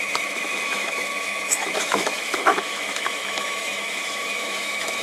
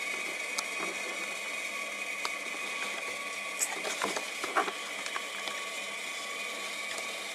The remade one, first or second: first